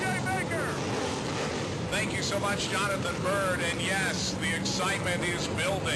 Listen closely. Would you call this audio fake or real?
real